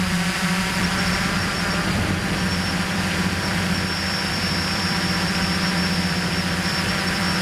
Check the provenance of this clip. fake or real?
fake